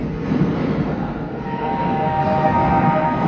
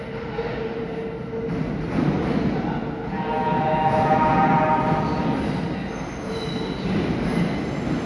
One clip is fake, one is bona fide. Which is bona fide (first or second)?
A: second